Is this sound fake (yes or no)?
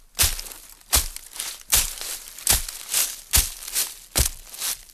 no